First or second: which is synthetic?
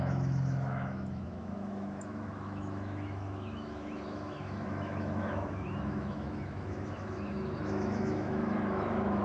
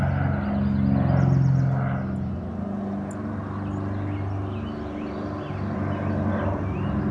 first